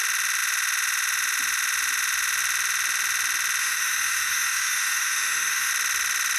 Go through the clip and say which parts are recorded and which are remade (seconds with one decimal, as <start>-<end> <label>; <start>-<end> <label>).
0.0-3.6 recorded; 3.6-5.7 remade; 5.7-6.4 recorded